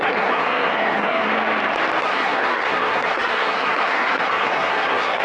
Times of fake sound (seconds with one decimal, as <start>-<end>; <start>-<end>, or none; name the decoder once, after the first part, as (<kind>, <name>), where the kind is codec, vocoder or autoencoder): 0.0-1.3 (codec, SNAC); 2.0-5.2